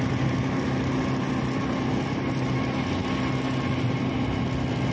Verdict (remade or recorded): recorded